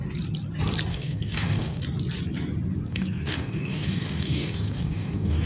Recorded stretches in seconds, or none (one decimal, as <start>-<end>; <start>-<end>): 0.0-0.9; 1.8-2.9